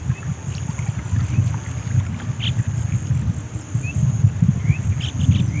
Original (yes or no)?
yes